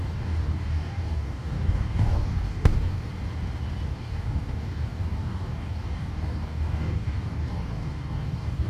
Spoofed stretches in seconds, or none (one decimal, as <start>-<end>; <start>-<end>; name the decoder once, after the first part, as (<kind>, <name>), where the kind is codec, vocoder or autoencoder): 0.0-3.1 (codec, DAC); 3.9-8.7